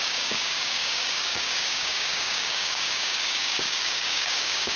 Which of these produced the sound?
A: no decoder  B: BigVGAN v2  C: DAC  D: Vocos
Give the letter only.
C